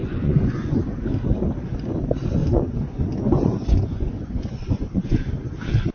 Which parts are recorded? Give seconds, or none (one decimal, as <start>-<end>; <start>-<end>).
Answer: 0.8-2.4; 5.3-5.9